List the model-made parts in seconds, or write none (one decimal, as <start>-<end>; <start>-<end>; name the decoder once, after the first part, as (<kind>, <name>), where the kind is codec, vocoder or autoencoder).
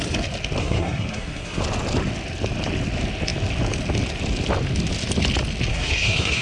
0.6-1.6 (codec, SNAC); 5.7-6.4